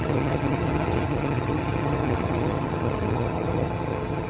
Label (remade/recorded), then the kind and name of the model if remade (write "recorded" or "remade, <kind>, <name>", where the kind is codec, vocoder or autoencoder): remade, vocoder, HiFi-GAN